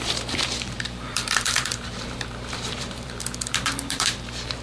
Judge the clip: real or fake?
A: fake